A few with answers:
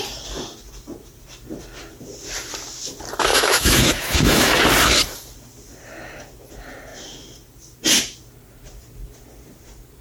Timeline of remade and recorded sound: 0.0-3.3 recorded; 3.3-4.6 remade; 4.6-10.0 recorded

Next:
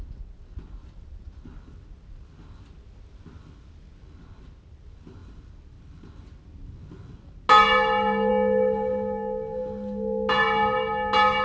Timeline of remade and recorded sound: 0.0-11.4 recorded

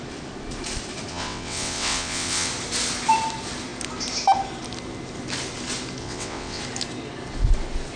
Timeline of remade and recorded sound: 0.0-1.1 recorded; 1.1-2.5 remade; 2.5-6.0 recorded; 6.0-6.6 remade; 6.6-8.0 recorded

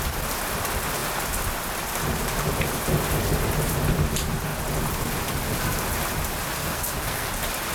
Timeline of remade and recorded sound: 0.0-6.6 recorded; 6.6-7.3 remade; 7.3-7.7 recorded

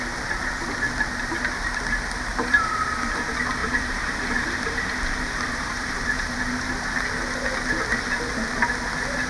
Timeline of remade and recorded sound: 0.0-2.3 recorded; 2.3-2.9 remade; 2.9-3.6 recorded; 3.6-6.8 remade; 6.8-9.3 recorded

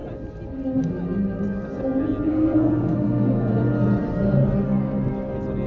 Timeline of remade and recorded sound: 0.0-2.3 recorded; 2.3-3.5 remade; 3.5-5.7 recorded

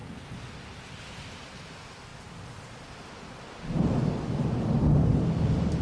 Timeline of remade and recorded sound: 0.0-5.8 recorded